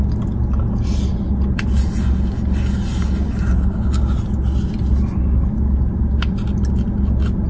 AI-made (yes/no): no